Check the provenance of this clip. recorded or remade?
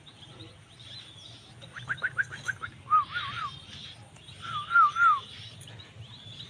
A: recorded